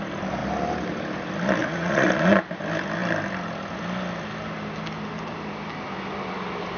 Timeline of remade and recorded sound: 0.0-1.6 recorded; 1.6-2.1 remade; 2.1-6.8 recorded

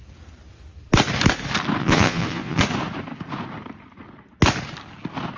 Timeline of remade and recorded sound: 0.0-1.8 recorded; 1.8-2.6 remade; 2.6-5.4 recorded

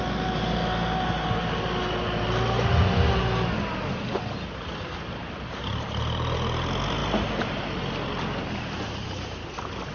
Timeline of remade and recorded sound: 0.0-9.9 recorded

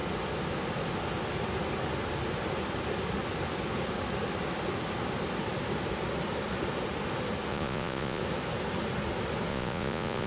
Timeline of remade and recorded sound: 0.0-7.5 recorded; 7.5-8.2 remade; 8.2-9.5 recorded; 9.5-10.3 remade

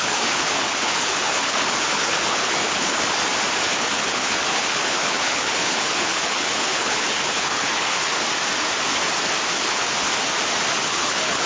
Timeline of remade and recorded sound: 0.0-3.2 remade; 3.2-3.8 recorded; 3.8-8.1 remade; 8.1-9.5 recorded; 9.5-10.1 remade; 10.1-10.8 recorded; 10.8-11.5 remade

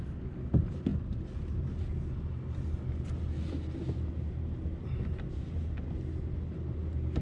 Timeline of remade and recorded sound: 0.0-7.2 recorded

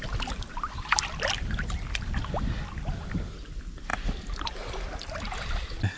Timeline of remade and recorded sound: 0.0-6.0 recorded

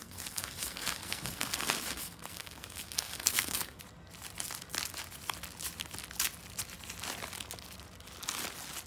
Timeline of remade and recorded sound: 0.0-3.8 remade; 3.8-8.9 recorded